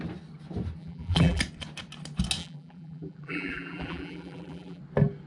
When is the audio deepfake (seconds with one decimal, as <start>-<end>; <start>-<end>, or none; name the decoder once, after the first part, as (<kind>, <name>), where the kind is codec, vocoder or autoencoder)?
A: 0.8-1.4 (vocoder, BigVGAN v2); 2.4-4.8